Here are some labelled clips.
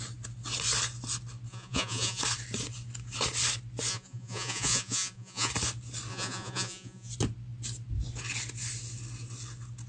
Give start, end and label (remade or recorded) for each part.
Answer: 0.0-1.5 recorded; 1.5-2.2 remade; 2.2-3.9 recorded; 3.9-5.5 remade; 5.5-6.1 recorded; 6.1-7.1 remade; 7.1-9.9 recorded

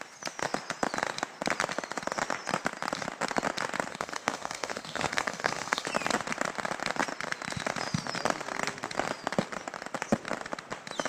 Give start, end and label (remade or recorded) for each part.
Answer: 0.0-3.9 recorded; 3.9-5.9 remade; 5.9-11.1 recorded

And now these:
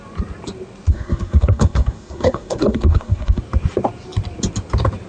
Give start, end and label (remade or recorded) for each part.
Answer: 0.0-0.9 recorded; 0.9-3.4 remade; 3.4-5.1 recorded

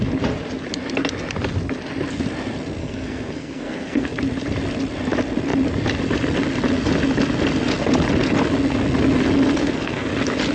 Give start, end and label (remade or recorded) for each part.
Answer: 0.0-2.8 recorded; 2.8-4.1 remade; 4.1-9.6 recorded; 9.6-10.1 remade; 10.1-10.5 recorded

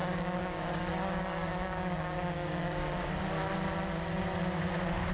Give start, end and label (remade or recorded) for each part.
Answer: 0.0-3.1 remade; 3.1-5.1 recorded

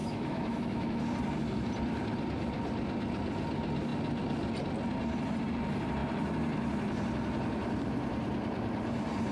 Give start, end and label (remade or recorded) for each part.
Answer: 0.0-1.0 remade; 1.0-9.3 recorded

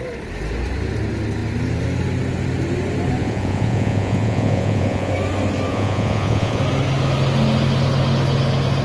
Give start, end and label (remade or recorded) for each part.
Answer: 0.0-3.2 recorded; 3.2-5.1 remade; 5.1-5.7 recorded; 5.7-6.6 remade; 6.6-8.8 recorded

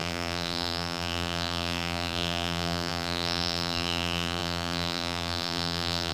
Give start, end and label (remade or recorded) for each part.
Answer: 0.0-6.1 remade